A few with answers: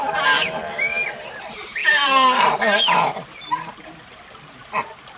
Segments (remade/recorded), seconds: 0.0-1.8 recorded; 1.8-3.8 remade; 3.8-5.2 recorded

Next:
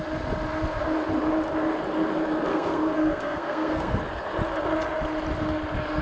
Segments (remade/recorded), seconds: 0.0-2.5 recorded; 2.5-4.0 remade; 4.0-6.0 recorded